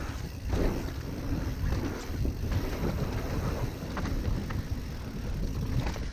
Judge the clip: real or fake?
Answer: real